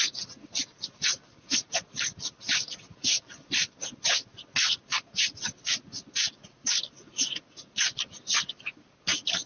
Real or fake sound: real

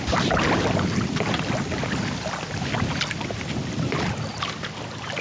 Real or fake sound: fake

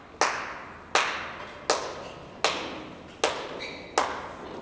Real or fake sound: real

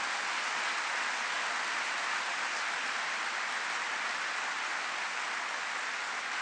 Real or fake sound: real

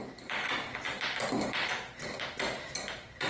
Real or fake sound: real